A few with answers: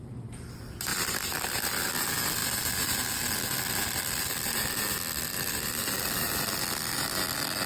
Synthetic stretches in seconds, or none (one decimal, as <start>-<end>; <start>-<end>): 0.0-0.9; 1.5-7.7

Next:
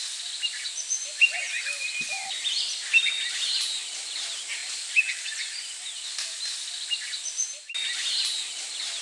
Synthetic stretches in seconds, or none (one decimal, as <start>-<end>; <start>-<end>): none

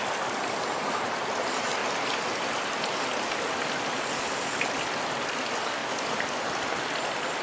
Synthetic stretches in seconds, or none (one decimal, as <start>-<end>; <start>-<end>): 0.0-1.8; 5.3-5.8; 6.8-7.4